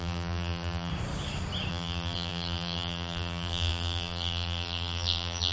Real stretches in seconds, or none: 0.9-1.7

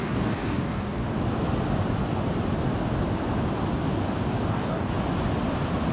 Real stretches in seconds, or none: 1.0-4.5; 4.9-5.9

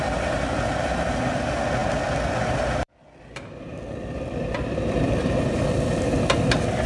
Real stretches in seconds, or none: 0.0-1.8; 5.5-6.9

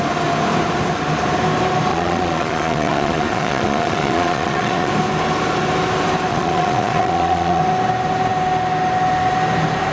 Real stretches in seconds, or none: 0.0-1.9; 4.9-6.3; 7.6-9.9

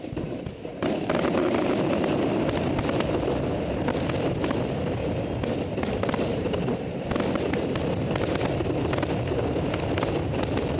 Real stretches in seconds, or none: 5.0-6.8